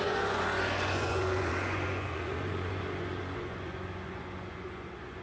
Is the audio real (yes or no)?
no